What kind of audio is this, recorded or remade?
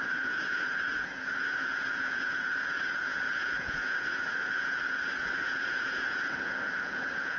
remade